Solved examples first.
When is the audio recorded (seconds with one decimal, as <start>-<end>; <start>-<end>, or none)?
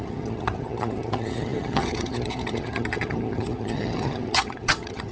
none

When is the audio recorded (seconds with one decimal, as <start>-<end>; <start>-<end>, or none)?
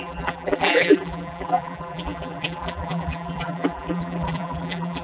none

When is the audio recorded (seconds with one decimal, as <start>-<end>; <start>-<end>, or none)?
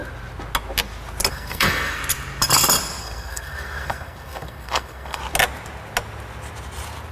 0.0-1.3; 2.0-3.0; 5.2-7.1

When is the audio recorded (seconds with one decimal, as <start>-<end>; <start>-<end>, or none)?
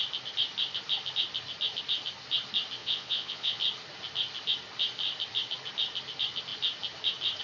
0.0-2.8; 3.6-7.4